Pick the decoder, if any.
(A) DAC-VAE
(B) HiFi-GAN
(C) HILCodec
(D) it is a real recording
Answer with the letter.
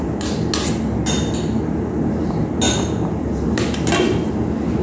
D